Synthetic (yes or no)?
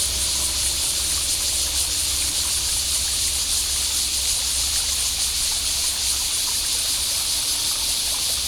yes